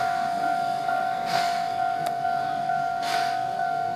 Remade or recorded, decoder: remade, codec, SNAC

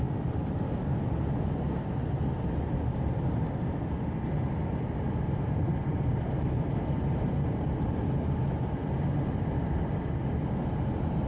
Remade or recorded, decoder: recorded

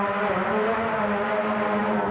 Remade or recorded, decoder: recorded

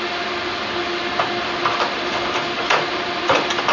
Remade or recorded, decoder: recorded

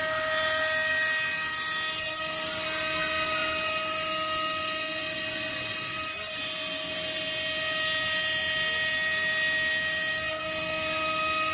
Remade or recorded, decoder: recorded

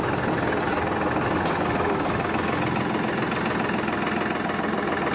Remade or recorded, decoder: recorded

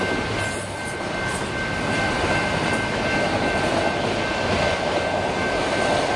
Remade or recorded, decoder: recorded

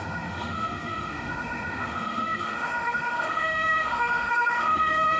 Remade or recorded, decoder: remade, autoencoder, DAC-VAE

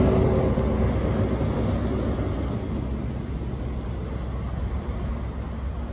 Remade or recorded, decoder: recorded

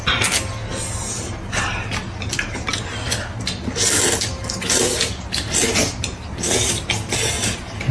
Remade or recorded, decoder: recorded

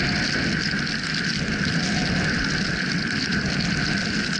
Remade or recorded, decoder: recorded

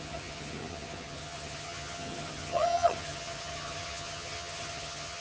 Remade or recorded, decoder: remade, vocoder, HiFi-GAN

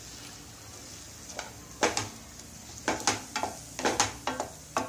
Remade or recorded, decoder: recorded